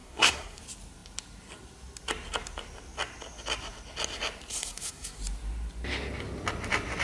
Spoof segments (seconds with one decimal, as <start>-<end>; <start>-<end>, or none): 0.0-0.6; 4.5-5.2